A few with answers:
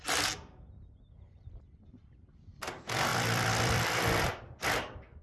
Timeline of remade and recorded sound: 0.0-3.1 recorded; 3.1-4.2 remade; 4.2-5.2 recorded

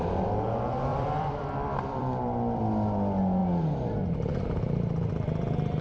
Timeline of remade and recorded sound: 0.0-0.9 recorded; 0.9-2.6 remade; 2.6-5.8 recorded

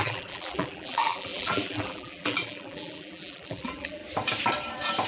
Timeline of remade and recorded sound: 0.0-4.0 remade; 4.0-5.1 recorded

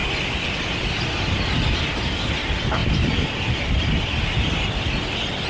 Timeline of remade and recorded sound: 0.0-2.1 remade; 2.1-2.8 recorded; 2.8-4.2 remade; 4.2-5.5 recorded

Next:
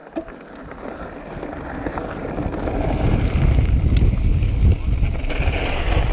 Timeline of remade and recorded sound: 0.0-6.1 recorded

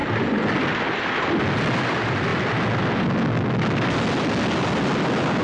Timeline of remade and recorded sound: 0.0-1.8 recorded; 1.8-2.3 remade; 2.3-5.4 recorded

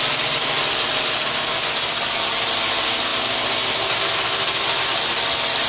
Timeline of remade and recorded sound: 0.0-5.7 recorded

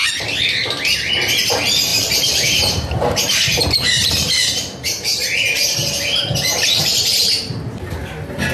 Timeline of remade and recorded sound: 0.0-1.9 recorded; 1.9-6.8 remade; 6.8-8.5 recorded